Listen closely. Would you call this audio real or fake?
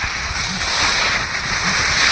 real